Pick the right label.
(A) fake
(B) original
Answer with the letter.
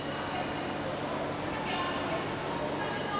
B